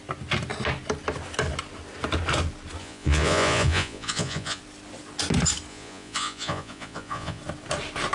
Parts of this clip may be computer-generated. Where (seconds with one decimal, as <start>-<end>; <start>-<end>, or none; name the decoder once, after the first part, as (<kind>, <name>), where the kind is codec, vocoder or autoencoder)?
2.8-4.6 (vocoder, Vocos); 5.7-7.4